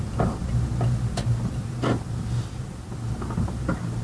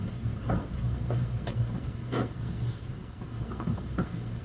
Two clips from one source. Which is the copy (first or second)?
second